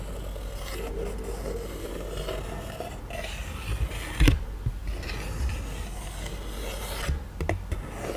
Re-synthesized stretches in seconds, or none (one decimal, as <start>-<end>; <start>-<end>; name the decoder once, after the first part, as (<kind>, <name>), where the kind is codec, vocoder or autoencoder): none